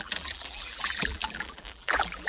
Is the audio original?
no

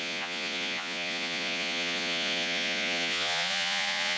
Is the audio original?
no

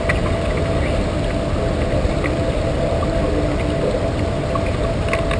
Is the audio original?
yes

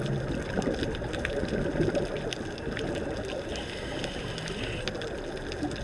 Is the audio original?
yes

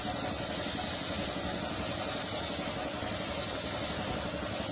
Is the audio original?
yes